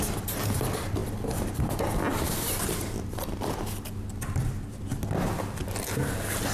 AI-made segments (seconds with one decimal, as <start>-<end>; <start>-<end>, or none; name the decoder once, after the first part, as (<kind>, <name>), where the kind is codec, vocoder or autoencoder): 1.0-1.6 (vocoder, BigVGAN v2); 2.1-4.8